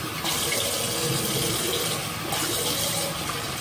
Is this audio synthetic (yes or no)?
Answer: no